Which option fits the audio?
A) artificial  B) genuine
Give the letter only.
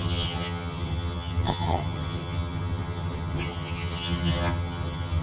A